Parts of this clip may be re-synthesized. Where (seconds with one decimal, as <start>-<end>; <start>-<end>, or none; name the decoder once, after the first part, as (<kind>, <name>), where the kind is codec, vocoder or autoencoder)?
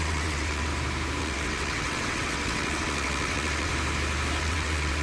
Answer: 0.0-0.7 (vocoder, WaveNeXt); 1.2-3.7; 4.4-5.0